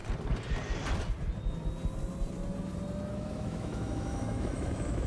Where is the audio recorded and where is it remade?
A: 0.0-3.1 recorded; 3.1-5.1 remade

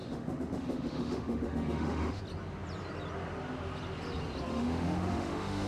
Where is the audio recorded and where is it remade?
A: 0.0-2.2 remade; 2.2-4.5 recorded; 4.5-5.7 remade

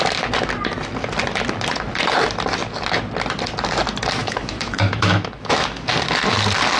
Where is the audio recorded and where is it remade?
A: 0.0-4.2 recorded; 4.2-5.9 remade; 5.9-6.8 recorded

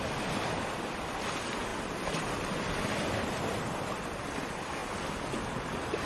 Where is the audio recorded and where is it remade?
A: 0.0-6.1 recorded

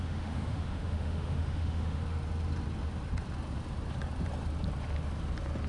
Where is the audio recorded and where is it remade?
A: 0.0-2.0 remade; 2.0-5.7 recorded